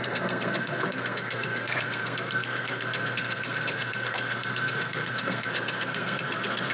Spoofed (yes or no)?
yes